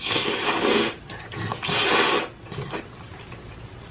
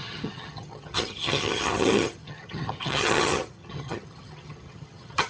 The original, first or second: first